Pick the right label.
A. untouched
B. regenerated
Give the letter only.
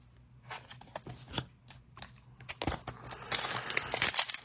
A